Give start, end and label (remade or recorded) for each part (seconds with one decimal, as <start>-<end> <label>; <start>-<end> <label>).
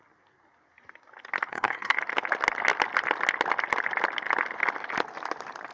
0.0-1.5 recorded; 1.5-2.0 remade; 2.0-5.7 recorded